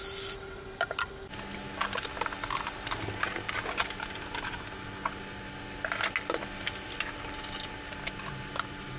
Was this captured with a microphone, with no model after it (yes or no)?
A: yes